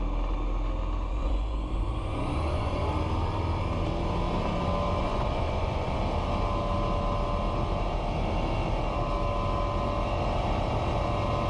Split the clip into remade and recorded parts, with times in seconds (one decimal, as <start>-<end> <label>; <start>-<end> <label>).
0.0-1.1 recorded; 1.1-2.8 remade; 2.8-5.0 recorded; 5.0-6.0 remade; 6.0-11.5 recorded